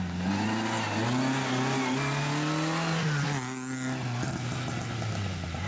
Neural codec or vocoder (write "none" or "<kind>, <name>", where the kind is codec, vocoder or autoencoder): none